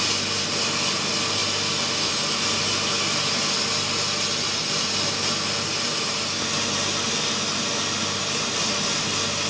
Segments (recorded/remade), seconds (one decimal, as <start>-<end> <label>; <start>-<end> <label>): 0.0-9.5 recorded